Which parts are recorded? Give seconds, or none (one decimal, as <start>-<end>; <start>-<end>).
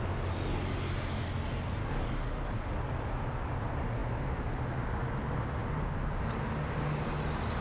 0.0-1.8; 2.9-7.6